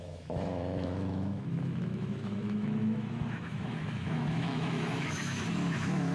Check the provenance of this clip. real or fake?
fake